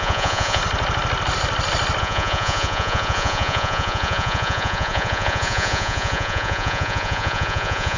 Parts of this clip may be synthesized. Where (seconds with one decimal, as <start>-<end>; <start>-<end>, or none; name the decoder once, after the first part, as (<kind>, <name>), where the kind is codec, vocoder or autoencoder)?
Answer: 0.0-0.6 (vocoder, Vocos); 2.0-8.0